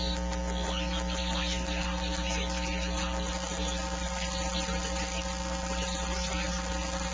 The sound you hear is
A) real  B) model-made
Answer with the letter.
A